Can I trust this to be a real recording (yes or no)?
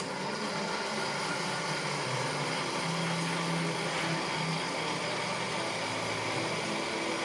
yes